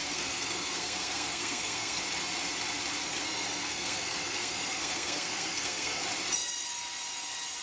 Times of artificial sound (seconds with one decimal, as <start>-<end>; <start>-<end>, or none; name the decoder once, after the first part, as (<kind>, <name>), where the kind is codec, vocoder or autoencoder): 0.0-2.0 (codec, SNAC); 3.0-6.0